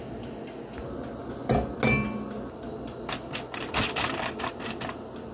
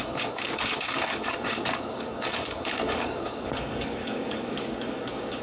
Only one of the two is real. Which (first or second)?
first